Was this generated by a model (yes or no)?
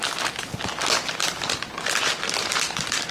no